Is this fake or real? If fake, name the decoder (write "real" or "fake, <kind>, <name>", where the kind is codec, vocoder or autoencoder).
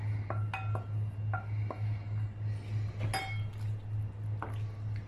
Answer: real